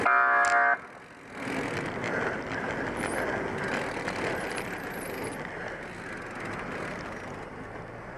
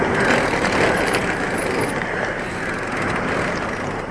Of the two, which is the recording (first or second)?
first